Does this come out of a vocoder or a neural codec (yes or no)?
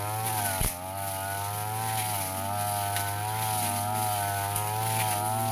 no